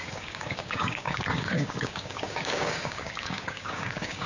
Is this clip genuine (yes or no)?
no